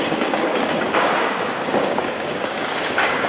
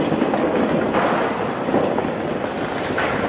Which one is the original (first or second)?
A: second